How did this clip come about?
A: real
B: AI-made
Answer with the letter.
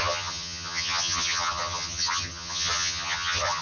B